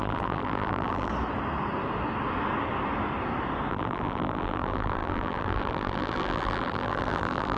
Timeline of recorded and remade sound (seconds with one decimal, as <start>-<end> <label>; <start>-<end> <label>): 0.0-1.1 remade; 1.1-3.7 recorded; 3.7-7.6 remade